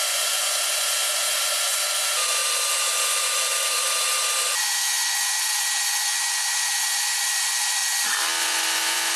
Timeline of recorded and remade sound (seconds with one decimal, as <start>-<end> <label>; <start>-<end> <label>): 0.0-2.4 remade; 2.4-4.6 recorded; 4.6-7.8 remade; 7.8-8.4 recorded; 8.4-9.2 remade